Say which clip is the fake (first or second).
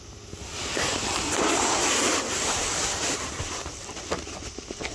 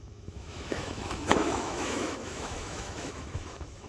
second